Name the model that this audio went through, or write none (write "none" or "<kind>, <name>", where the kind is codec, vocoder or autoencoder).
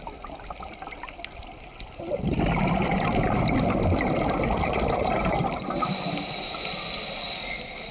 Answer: none